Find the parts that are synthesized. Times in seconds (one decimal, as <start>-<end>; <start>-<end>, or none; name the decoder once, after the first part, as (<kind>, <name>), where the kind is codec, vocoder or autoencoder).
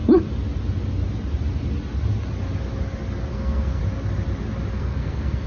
3.3-3.8 (codec, SNAC); 4.7-5.5